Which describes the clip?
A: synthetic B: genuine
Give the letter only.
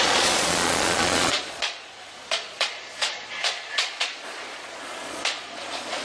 A